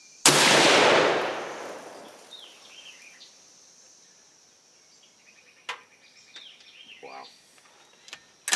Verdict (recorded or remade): recorded